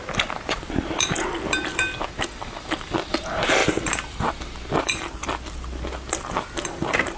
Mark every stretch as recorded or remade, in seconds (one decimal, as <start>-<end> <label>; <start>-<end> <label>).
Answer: 0.0-7.2 recorded